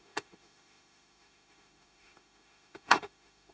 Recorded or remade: remade